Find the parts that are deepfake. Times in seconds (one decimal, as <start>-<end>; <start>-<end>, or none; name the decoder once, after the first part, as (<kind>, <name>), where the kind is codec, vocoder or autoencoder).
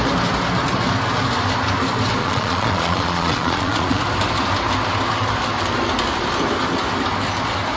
2.2-4.0 (vocoder, Vocos)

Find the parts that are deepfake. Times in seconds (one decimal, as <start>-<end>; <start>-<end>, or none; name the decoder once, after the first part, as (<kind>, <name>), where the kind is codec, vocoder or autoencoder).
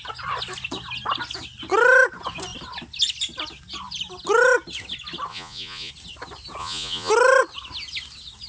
5.3-5.9 (vocoder, Vocos); 6.6-7.1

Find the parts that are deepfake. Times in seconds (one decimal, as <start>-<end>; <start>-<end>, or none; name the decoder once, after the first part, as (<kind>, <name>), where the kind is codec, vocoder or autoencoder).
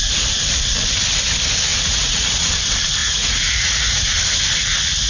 1.7-2.5 (vocoder, Vocos); 3.0-4.2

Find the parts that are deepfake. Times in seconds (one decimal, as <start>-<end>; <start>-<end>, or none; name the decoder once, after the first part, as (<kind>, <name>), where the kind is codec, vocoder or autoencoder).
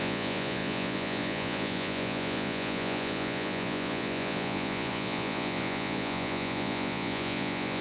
0.0-7.8 (vocoder, Vocos)